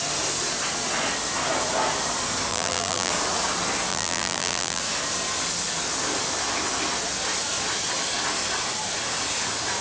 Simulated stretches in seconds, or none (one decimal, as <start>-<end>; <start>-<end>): 2.5-3.1; 3.9-4.8